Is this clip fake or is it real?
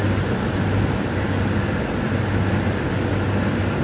real